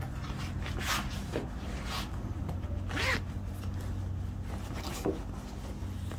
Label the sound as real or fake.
real